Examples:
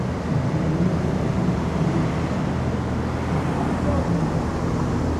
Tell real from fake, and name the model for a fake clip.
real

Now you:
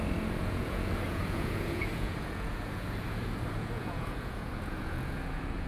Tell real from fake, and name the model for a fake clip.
fake, vocoder, Vocos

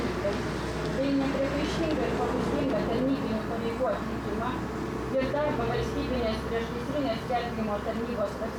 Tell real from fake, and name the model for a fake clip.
real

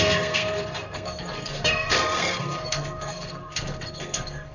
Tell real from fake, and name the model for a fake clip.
fake, codec, SNAC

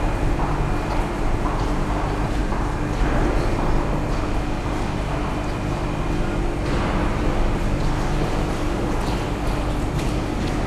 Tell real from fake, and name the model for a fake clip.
real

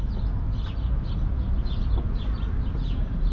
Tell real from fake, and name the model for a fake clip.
real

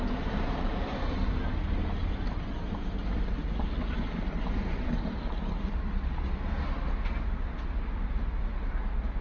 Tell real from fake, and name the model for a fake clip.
real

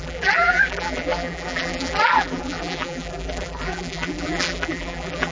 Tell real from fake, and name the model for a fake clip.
fake, vocoder, BigVGAN v2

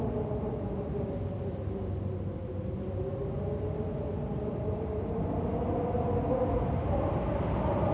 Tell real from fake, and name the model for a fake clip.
real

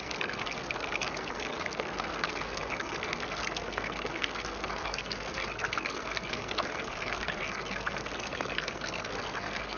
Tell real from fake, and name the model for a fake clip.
fake, codec, SNAC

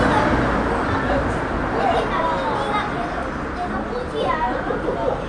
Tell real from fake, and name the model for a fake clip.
real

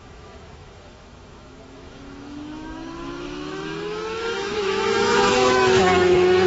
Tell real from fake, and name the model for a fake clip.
fake, autoencoder, DAC-VAE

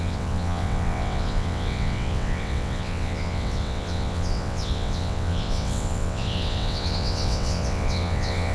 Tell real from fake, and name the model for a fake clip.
fake, vocoder, WaveNeXt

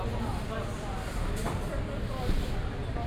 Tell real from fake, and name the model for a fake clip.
real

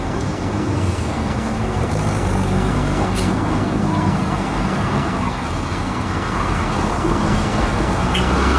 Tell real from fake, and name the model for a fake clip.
fake, codec, SNAC